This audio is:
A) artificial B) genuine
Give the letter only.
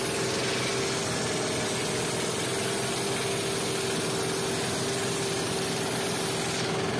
B